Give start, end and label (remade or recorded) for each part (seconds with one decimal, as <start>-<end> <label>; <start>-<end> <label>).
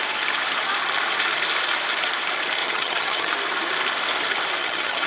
0.0-2.6 recorded; 2.6-3.3 remade; 3.3-4.6 recorded; 4.6-5.1 remade